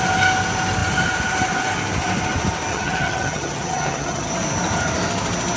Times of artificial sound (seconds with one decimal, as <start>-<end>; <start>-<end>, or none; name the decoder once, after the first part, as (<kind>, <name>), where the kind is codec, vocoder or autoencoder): 2.7-4.3 (vocoder, HiFi-GAN)